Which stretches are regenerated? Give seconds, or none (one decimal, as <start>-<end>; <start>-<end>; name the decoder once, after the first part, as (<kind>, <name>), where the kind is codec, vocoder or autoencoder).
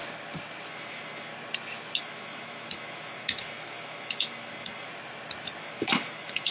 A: 0.7-1.3 (autoencoder, DAC-VAE); 2.0-4.9; 5.6-6.5